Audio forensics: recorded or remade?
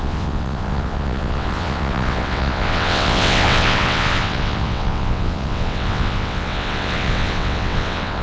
remade